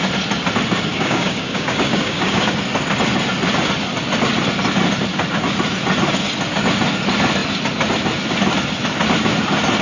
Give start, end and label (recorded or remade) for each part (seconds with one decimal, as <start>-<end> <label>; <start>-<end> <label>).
0.0-0.9 recorded; 0.9-2.5 remade; 2.5-9.8 recorded